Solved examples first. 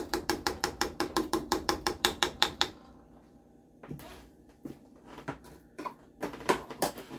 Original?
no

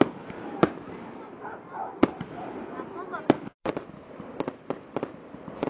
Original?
no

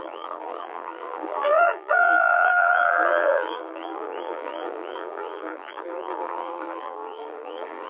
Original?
no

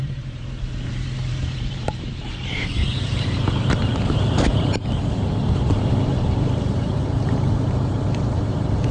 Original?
no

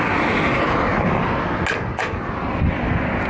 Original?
yes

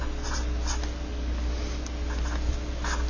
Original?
yes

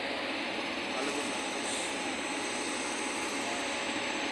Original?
yes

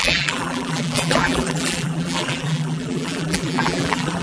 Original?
no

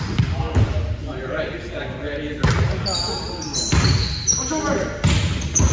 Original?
yes